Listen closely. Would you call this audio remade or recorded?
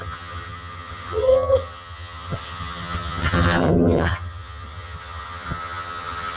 remade